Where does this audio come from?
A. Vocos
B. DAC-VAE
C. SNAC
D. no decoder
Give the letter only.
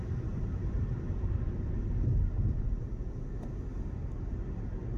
D